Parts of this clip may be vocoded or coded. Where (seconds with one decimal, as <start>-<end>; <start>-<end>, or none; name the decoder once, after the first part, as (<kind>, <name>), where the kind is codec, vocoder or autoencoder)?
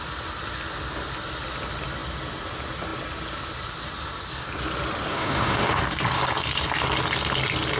5.1-5.8 (autoencoder, DAC-VAE)